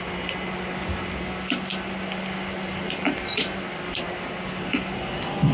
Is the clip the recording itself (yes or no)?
yes